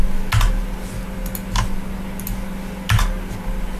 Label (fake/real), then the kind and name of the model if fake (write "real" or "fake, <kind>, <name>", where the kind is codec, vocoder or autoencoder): real